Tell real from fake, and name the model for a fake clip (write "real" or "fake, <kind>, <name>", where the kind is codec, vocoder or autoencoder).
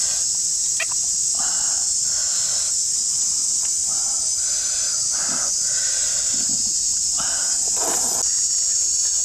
real